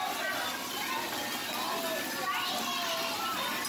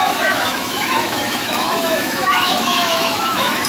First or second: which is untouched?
first